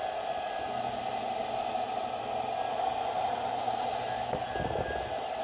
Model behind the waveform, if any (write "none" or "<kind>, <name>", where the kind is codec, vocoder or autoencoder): none